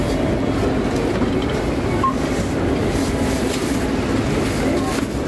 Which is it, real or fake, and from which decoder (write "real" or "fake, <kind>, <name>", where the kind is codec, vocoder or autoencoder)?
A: real